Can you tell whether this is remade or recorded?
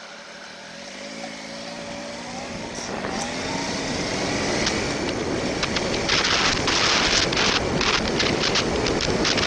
recorded